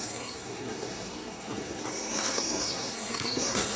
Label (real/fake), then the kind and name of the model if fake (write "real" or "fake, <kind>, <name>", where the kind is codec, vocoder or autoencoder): fake, codec, SNAC